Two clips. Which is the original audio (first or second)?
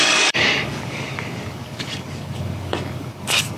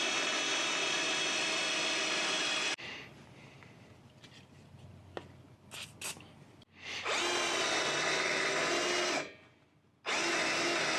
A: second